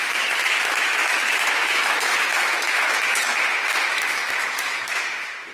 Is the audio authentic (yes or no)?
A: no